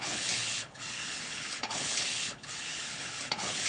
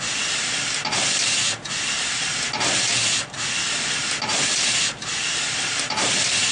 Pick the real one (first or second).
second